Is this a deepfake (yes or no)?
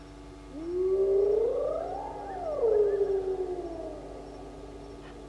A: no